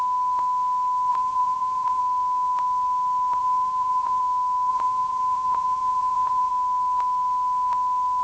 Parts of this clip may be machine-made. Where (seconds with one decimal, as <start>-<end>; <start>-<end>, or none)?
1.1-2.0; 3.4-4.2; 4.7-6.5